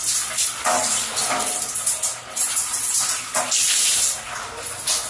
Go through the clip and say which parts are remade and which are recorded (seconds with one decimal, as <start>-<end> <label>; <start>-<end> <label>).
0.0-5.1 recorded